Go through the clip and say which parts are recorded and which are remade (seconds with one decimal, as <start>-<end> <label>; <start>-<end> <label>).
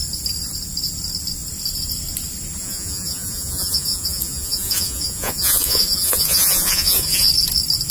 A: 0.0-2.6 recorded; 2.6-7.3 remade; 7.3-7.9 recorded